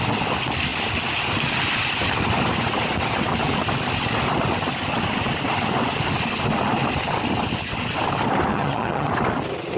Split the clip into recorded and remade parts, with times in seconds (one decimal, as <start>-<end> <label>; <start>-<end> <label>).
0.0-8.5 recorded; 8.5-9.1 remade; 9.1-9.8 recorded